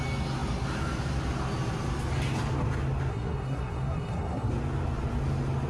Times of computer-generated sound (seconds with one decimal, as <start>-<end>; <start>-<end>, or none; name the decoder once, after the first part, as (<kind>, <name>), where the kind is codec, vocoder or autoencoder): 3.1-4.5 (codec, SNAC)